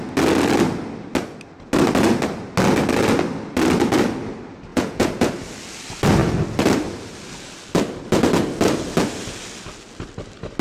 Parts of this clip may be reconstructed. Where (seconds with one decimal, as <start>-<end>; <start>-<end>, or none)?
4.7-5.3